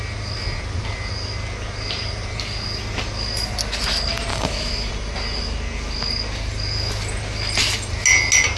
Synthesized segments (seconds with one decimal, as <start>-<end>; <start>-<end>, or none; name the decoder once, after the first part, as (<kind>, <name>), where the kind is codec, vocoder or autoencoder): 4.3-4.9 (autoencoder, DAC-VAE)